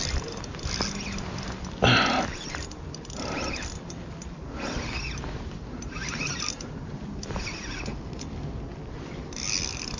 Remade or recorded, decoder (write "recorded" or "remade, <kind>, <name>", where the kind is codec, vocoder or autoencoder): recorded